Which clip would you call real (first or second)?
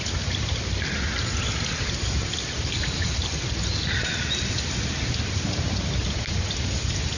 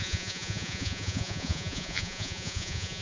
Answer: first